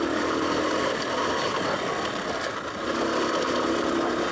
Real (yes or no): yes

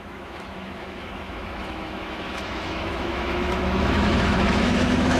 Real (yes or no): no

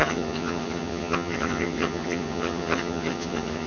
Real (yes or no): no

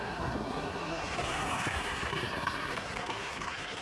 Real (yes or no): no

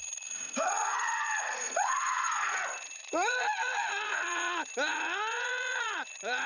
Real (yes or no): no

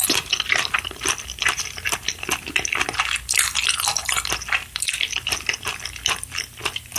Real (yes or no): yes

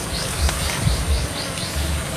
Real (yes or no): no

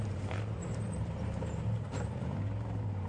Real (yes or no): no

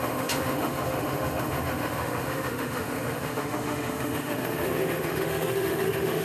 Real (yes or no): no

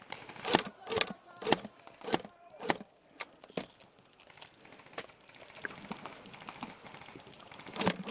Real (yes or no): yes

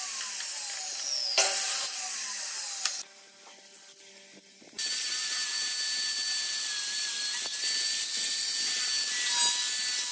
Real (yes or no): yes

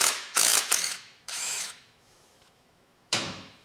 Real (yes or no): no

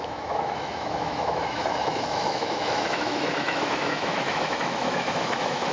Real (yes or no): no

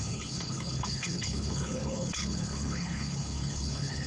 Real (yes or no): no